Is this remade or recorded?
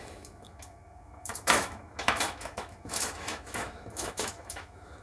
remade